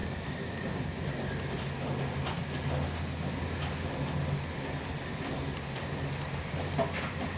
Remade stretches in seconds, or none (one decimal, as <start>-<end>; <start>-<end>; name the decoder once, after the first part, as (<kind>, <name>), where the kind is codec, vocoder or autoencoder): none